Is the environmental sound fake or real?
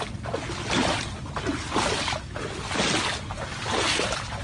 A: real